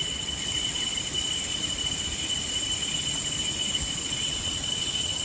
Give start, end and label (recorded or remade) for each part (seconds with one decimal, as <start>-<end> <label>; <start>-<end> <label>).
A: 0.0-0.9 remade; 0.9-4.0 recorded; 4.0-5.2 remade